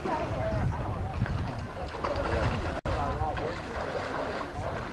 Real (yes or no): yes